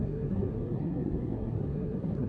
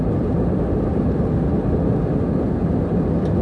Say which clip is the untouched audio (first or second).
second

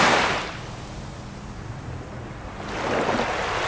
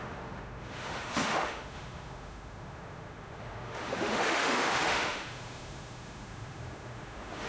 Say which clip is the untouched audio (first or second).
first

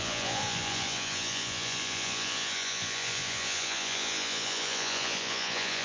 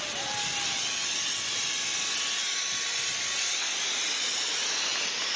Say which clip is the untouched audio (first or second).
second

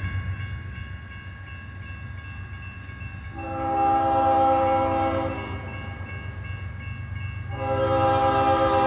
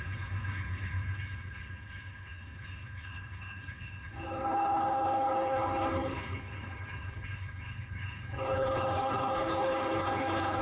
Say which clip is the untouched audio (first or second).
first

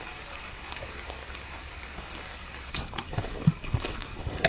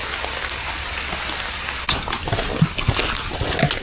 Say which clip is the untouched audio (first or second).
second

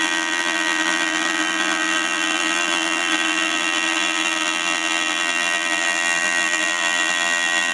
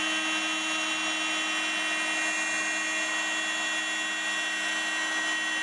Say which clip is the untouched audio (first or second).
second